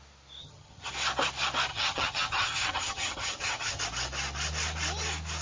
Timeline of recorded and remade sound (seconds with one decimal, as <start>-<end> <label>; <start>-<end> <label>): 0.0-0.4 recorded; 0.4-0.9 remade; 0.9-1.7 recorded; 1.7-3.8 remade; 3.8-5.4 recorded